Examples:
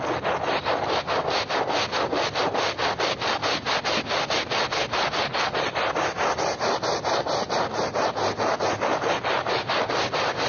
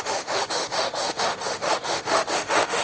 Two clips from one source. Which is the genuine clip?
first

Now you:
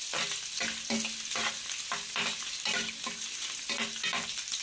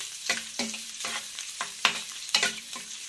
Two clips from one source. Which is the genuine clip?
first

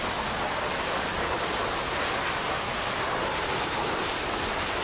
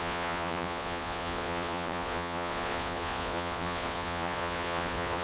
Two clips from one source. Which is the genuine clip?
first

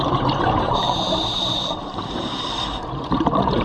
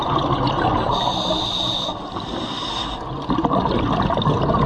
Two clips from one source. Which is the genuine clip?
second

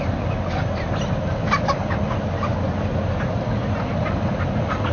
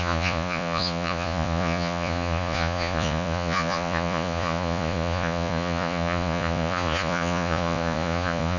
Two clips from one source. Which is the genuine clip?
first